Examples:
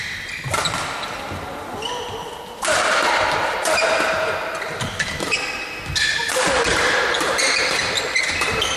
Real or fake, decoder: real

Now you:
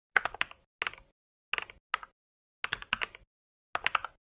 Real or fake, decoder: real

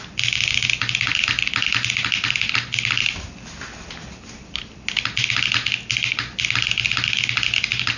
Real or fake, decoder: real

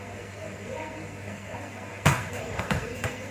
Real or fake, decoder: fake, codec, SNAC